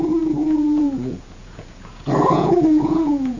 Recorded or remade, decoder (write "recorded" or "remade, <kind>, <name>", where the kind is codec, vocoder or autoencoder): remade, vocoder, Vocos